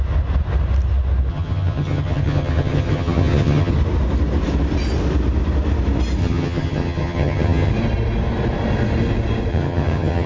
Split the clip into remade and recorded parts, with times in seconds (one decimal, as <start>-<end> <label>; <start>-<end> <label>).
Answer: 0.0-1.3 recorded; 1.3-3.7 remade; 3.7-6.2 recorded; 6.2-7.7 remade; 7.7-9.5 recorded; 9.5-10.3 remade